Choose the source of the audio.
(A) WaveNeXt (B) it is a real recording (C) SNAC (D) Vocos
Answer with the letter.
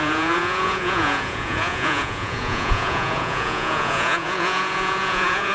D